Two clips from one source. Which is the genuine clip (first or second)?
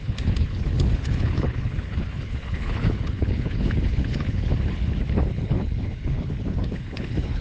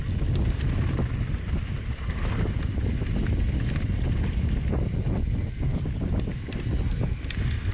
second